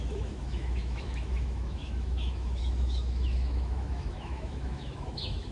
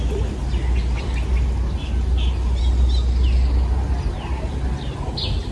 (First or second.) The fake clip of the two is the first